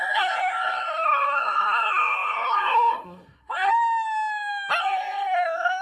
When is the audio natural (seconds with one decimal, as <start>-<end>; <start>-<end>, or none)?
3.7-4.8